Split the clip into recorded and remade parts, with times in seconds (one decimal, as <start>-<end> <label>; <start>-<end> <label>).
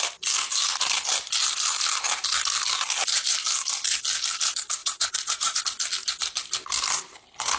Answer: 0.0-4.8 recorded; 4.8-5.6 remade; 5.6-7.6 recorded